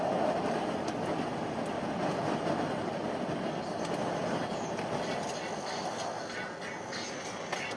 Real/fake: real